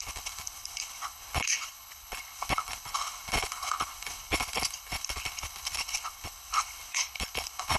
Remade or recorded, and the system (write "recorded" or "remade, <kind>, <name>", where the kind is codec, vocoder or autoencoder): remade, codec, HILCodec